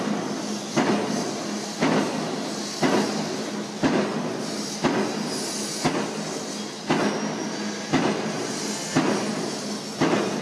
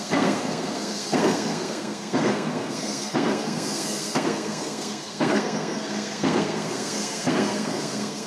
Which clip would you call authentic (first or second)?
first